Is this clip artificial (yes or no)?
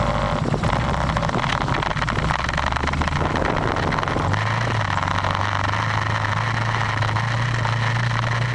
no